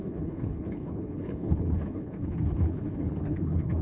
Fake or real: fake